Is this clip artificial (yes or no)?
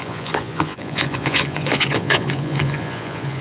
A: yes